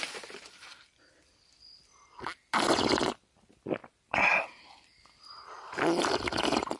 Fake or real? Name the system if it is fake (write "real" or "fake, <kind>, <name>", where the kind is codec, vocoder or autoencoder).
fake, vocoder, BigVGAN v2